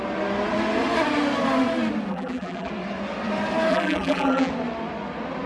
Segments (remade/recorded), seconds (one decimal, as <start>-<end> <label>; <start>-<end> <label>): 0.0-2.1 recorded; 2.1-2.7 remade; 2.7-3.7 recorded; 3.7-4.5 remade; 4.5-5.5 recorded